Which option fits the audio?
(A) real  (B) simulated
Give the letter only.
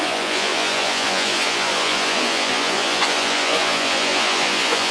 B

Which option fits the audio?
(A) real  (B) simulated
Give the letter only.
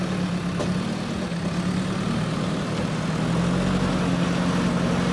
A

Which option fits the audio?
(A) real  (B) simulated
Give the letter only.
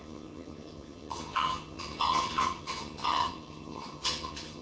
B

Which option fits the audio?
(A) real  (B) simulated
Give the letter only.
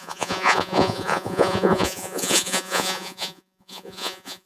B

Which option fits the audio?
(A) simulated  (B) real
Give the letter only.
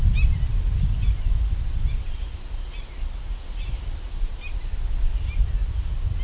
B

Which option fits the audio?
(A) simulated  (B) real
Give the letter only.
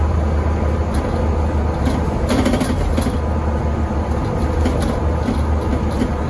B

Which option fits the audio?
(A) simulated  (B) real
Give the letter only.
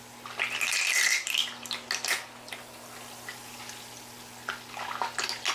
B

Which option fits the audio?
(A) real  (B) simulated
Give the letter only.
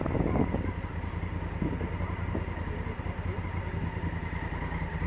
A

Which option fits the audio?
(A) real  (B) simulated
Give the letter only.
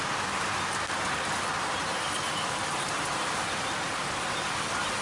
A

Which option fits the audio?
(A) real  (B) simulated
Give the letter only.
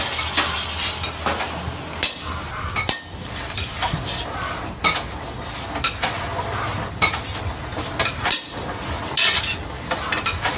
A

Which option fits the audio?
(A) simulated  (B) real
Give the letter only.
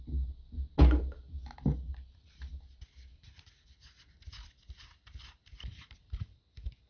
B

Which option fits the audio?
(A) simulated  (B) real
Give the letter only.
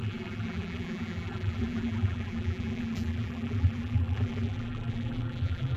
A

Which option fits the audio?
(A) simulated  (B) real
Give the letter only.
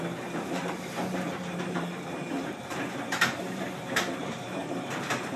A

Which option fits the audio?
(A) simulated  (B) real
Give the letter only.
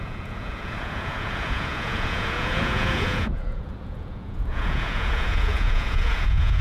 A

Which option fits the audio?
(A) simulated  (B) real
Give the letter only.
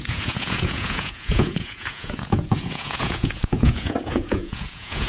A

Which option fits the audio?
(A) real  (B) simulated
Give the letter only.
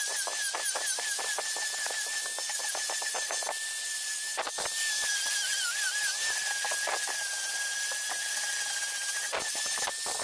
A